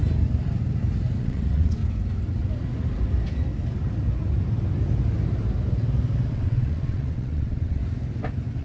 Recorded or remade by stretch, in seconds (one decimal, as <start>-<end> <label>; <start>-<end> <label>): 0.0-1.2 recorded; 1.2-1.8 remade; 1.8-6.3 recorded; 6.3-7.8 remade; 7.8-8.6 recorded